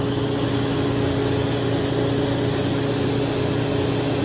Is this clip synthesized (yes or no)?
no